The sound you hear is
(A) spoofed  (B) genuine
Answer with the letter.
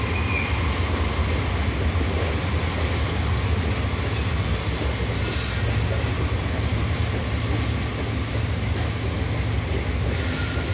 B